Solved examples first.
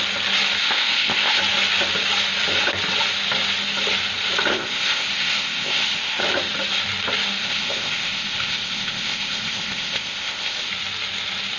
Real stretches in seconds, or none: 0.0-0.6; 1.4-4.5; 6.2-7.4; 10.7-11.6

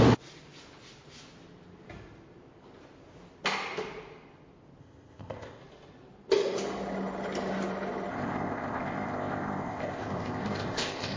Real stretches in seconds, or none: 0.0-4.8; 5.6-8.1

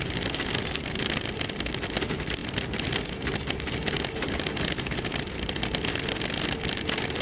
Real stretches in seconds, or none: 0.0-7.2

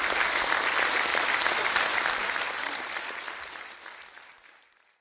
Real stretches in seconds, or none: 0.0-5.0

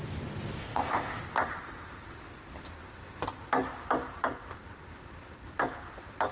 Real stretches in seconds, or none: 0.0-0.6; 1.2-6.3

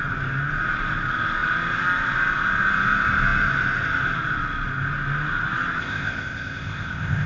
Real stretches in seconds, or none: 0.0-5.8